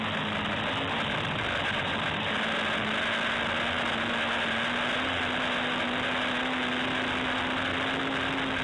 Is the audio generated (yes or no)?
no